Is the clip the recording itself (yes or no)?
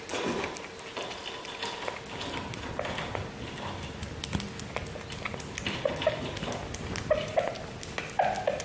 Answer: yes